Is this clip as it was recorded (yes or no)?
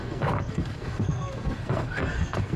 no